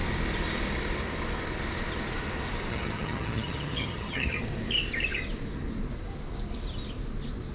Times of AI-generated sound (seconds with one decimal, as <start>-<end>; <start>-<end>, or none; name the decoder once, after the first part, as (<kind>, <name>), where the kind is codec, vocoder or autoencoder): 2.7-4.4 (vocoder, HiFi-GAN)